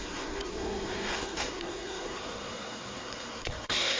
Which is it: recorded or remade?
remade